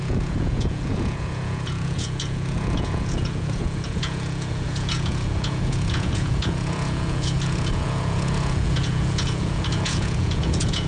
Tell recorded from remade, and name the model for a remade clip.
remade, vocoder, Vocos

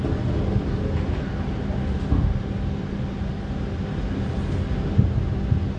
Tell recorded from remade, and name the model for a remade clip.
recorded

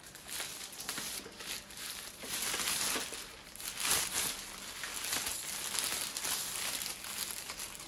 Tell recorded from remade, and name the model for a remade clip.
recorded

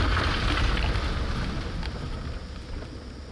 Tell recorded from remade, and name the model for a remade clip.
recorded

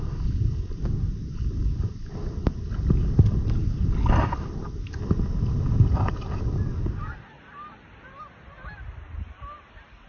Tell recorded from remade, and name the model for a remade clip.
recorded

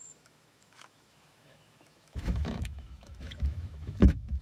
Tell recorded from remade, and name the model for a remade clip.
remade, autoencoder, DAC-VAE